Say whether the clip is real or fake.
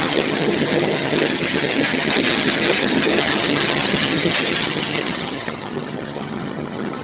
fake